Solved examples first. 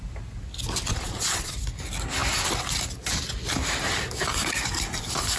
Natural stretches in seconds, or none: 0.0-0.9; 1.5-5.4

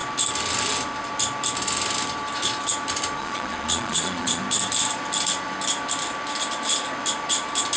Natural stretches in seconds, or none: 0.0-3.2; 4.4-7.8

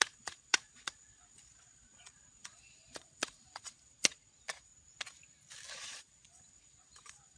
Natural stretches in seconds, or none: 4.7-5.7

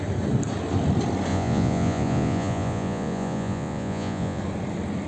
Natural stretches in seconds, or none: 0.0-1.3; 4.4-5.1

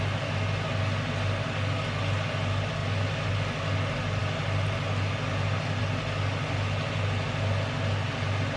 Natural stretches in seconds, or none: 0.0-8.6

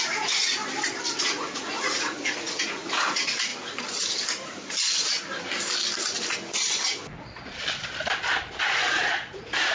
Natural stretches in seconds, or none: 0.6-1.2; 3.5-8.6